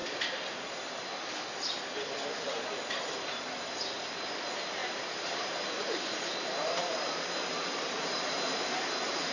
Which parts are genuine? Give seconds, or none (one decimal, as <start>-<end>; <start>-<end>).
0.0-4.8

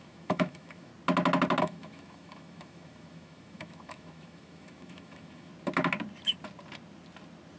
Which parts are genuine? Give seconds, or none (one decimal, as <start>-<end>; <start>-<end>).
0.9-1.6; 5.5-7.6

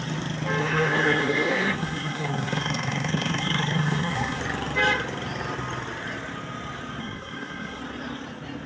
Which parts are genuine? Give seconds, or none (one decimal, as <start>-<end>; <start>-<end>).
0.0-0.6; 4.4-7.0; 7.8-8.7